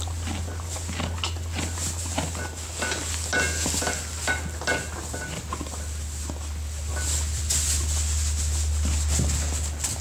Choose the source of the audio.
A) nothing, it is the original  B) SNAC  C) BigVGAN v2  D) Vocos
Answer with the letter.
A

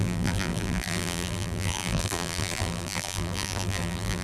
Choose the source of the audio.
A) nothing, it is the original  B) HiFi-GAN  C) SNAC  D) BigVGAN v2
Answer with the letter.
D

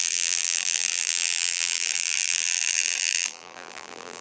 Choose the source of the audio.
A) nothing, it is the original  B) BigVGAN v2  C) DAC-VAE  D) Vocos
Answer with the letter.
B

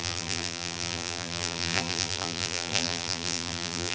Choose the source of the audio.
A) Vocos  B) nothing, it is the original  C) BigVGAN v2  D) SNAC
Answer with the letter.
C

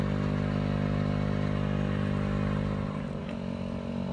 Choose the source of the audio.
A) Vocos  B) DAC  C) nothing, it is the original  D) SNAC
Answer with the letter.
C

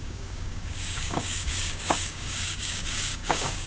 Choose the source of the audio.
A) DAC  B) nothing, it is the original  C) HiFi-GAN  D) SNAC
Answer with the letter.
A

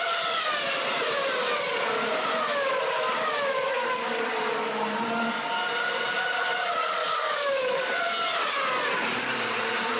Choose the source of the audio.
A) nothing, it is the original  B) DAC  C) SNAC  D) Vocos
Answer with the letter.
A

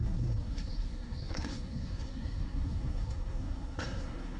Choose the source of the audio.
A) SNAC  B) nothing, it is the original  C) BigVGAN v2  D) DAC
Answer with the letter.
A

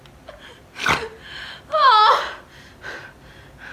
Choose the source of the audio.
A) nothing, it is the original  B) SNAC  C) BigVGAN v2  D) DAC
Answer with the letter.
A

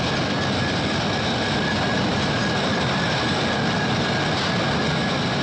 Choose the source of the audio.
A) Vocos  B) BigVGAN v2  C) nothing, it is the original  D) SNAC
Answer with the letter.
C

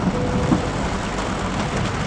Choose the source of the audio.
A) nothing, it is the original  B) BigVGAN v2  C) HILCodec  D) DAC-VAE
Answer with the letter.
A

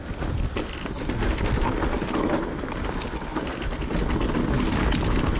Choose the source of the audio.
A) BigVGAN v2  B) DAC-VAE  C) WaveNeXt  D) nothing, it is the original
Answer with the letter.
D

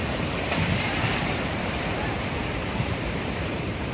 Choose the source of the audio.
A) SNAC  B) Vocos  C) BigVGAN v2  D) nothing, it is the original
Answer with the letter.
C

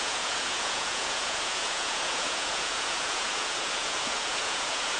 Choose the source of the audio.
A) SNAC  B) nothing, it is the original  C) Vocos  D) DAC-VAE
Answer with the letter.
C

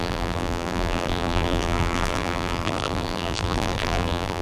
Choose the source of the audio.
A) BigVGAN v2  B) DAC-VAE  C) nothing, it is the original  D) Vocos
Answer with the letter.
A